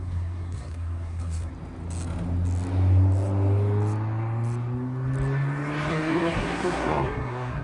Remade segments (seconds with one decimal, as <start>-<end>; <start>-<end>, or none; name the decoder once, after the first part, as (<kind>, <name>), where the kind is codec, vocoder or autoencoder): 0.0-1.5 (codec, SNAC); 5.9-7.6